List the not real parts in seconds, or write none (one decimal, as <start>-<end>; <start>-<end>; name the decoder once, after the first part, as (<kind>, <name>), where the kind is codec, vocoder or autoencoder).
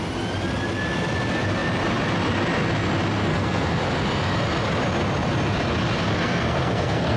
3.3-3.8 (codec, SNAC); 6.1-7.2